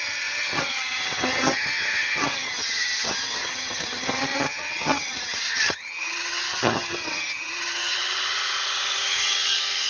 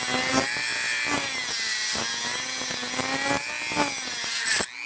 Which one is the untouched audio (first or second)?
second